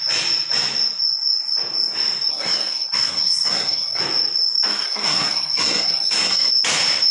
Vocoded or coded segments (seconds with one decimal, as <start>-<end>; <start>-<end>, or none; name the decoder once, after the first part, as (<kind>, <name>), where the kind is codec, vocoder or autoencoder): 2.3-4.0 (codec, SNAC); 4.8-6.5